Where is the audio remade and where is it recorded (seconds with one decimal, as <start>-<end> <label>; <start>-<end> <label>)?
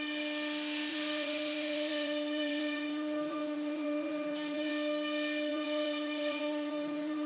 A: 0.0-0.9 recorded; 0.9-4.7 remade; 4.7-5.5 recorded; 5.5-7.3 remade